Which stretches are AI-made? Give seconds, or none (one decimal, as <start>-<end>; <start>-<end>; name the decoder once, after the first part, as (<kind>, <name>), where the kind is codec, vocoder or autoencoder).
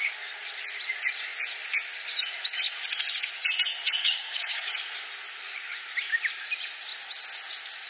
4.0-4.7 (codec, DAC)